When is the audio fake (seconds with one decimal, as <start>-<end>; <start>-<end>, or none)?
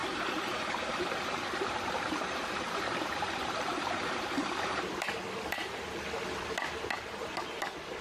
0.0-4.8